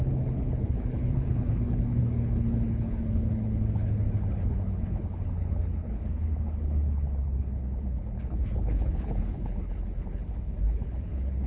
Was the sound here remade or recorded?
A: remade